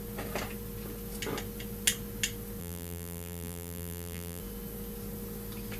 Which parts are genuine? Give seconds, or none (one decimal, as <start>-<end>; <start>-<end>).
0.0-2.6; 4.4-5.8

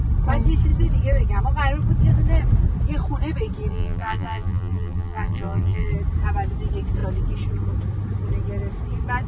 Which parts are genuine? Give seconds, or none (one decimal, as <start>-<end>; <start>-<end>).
0.0-3.7; 5.9-9.3